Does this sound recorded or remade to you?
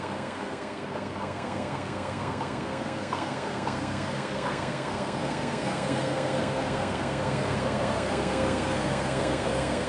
remade